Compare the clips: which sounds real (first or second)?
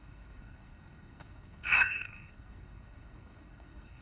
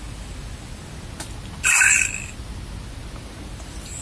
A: second